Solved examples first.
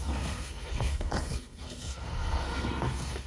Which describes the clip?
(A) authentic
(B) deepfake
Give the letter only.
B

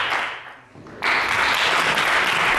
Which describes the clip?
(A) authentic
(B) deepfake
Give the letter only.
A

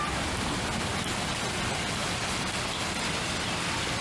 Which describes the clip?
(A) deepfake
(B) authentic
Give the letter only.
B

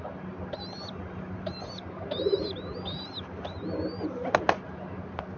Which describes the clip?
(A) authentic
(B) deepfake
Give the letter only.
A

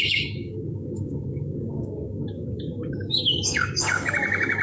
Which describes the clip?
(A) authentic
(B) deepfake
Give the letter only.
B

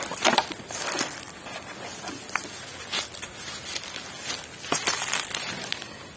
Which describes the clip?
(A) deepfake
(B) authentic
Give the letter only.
B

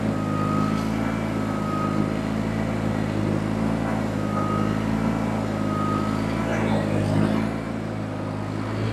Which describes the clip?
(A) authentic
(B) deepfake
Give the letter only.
A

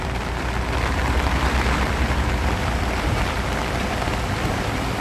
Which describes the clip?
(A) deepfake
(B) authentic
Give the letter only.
A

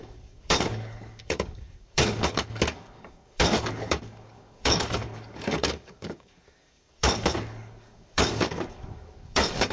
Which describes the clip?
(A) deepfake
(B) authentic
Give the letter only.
A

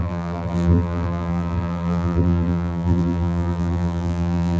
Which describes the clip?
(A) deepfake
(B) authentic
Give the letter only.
A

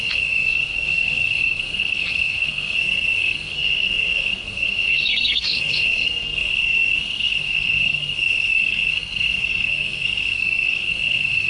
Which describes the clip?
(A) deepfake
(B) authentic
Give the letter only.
A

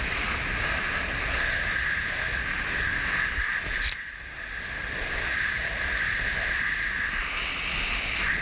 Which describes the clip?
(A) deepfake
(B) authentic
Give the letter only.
B